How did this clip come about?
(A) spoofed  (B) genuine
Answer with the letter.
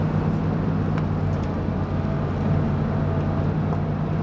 B